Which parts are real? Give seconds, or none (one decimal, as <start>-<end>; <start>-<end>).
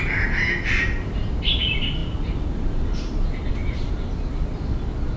0.0-5.2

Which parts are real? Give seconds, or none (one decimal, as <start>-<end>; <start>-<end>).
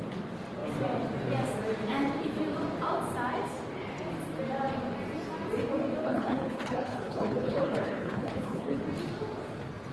0.0-6.0; 8.8-9.9